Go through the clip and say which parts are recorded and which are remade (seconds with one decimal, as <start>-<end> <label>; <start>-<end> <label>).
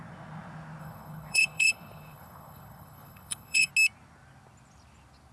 0.0-0.8 recorded; 0.8-3.7 remade; 3.7-5.3 recorded